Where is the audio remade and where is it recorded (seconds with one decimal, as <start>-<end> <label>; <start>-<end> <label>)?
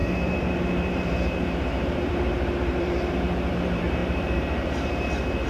0.0-5.5 remade